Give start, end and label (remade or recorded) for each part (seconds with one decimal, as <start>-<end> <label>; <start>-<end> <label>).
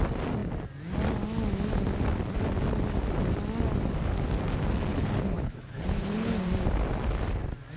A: 0.0-4.9 recorded; 4.9-6.4 remade; 6.4-7.8 recorded